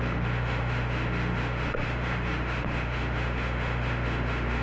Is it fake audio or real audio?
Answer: fake